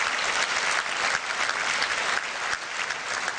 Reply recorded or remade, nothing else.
recorded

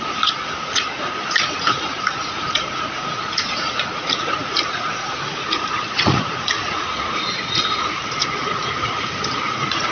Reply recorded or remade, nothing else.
remade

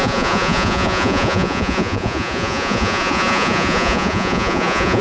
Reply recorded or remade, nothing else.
remade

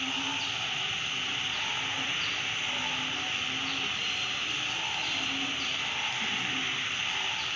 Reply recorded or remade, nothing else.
recorded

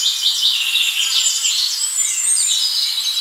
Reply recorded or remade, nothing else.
recorded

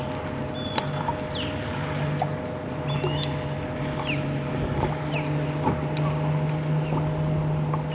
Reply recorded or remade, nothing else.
recorded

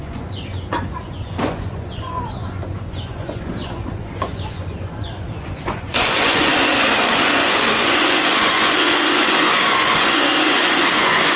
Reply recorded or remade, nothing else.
remade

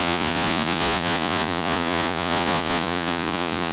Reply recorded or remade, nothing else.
remade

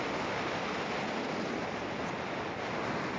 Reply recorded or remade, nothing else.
recorded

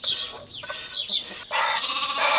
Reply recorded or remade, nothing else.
recorded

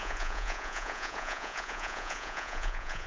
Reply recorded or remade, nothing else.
remade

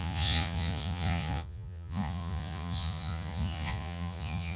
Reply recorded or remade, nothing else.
remade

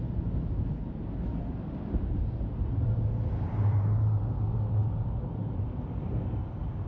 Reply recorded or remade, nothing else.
recorded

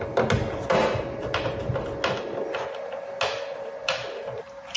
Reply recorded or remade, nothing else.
recorded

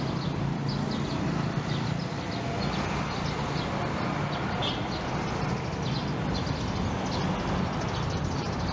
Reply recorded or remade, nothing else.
recorded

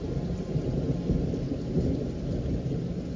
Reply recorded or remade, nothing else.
recorded